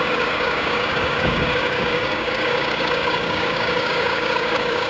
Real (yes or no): no